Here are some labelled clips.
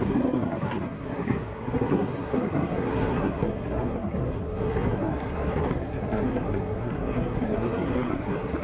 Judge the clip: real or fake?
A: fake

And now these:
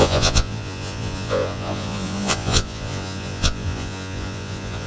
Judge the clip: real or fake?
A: fake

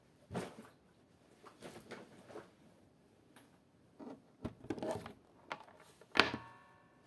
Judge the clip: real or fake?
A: real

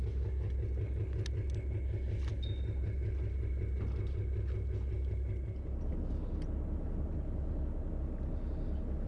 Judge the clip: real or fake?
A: real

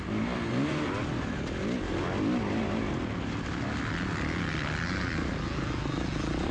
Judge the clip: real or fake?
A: real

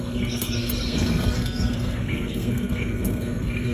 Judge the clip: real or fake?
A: fake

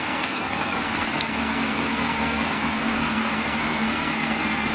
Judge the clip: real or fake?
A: fake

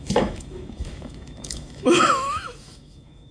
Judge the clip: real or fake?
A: fake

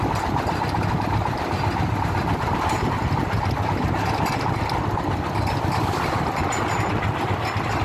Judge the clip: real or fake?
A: real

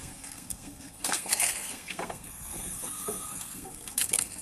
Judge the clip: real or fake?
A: fake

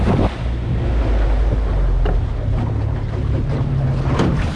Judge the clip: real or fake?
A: real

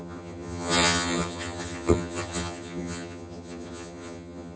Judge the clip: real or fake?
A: fake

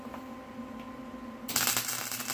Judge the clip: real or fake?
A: real